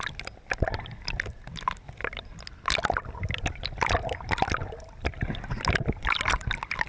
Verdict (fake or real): real